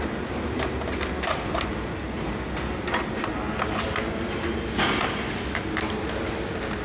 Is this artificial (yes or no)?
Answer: no